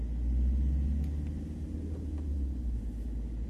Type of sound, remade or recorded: recorded